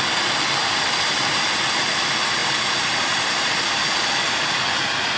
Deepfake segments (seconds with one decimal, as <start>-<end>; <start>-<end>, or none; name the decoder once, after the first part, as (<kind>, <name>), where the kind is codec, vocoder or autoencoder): 0.6-1.8 (vocoder, BigVGAN v2); 2.4-3.8

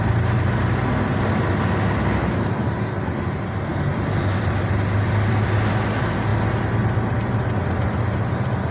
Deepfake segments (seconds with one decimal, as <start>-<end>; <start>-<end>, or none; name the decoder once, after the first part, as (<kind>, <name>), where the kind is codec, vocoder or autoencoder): 2.2-2.8 (vocoder, BigVGAN v2); 3.7-5.7

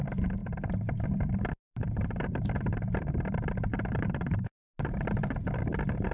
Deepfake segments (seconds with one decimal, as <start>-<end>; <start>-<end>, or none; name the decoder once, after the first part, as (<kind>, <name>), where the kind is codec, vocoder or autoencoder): 0.0-4.7 (vocoder, BigVGAN v2); 5.3-6.1

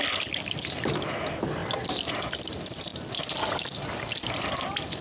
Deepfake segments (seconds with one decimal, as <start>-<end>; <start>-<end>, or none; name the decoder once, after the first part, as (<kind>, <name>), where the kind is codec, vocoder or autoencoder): none